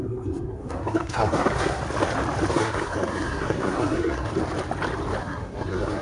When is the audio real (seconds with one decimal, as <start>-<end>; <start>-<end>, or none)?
1.8-2.5; 4.3-5.2